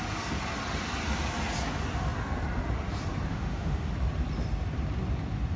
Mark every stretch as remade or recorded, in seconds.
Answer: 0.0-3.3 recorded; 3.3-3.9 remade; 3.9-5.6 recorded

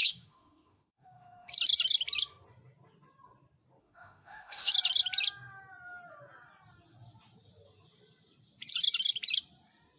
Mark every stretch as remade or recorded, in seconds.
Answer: 0.0-1.5 remade; 1.5-3.8 recorded; 3.8-4.7 remade; 4.7-10.0 recorded

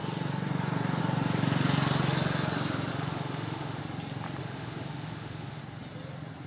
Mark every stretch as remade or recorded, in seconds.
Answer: 0.0-2.9 recorded; 2.9-3.8 remade; 3.8-4.4 recorded; 4.4-5.6 remade; 5.6-6.5 recorded

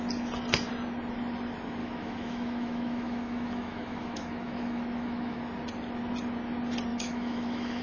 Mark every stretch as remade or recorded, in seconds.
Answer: 0.0-1.8 recorded; 1.8-5.4 remade; 5.4-6.9 recorded; 6.9-7.8 remade

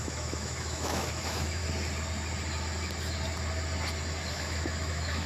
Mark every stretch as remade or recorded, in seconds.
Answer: 0.0-1.6 remade; 1.6-4.3 recorded; 4.3-5.3 remade

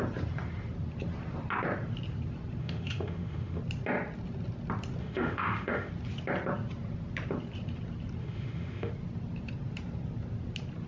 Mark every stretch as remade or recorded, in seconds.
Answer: 0.0-2.6 recorded; 2.6-3.6 remade; 3.6-5.0 recorded; 5.0-5.9 remade; 5.9-8.2 recorded; 8.2-8.9 remade; 8.9-10.9 recorded

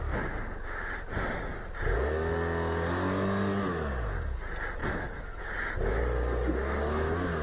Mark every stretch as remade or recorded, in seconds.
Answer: 0.0-4.8 recorded; 4.8-5.4 remade; 5.4-7.4 recorded

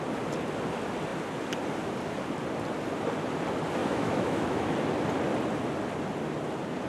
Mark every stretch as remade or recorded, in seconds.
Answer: 0.0-3.8 recorded; 3.8-4.7 remade; 4.7-6.9 recorded